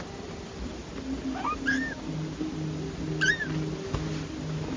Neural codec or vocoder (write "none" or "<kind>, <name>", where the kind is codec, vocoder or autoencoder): none